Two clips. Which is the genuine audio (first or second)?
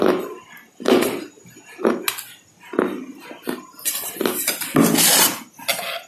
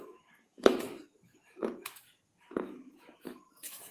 first